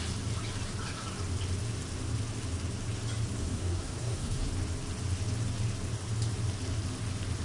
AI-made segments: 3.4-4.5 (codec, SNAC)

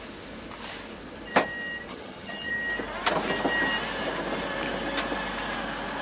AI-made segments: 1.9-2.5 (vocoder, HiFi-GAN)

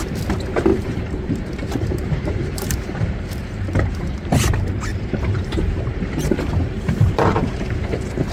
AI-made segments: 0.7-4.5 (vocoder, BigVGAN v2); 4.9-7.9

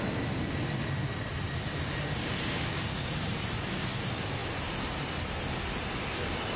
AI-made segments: none

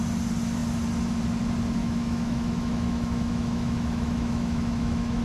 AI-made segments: 1.8-5.2 (autoencoder, DAC-VAE)

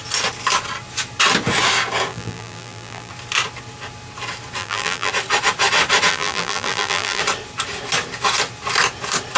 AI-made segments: 2.1-3.1 (vocoder, BigVGAN v2); 4.6-5.1; 6.1-7.2